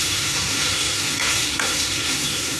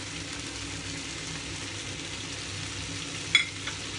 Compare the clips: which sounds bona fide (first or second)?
second